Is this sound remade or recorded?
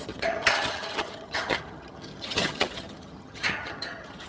remade